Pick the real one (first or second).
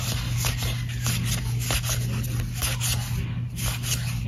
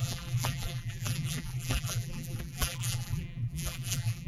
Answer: first